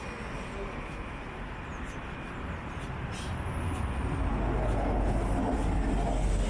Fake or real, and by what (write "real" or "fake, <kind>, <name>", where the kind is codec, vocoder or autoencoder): real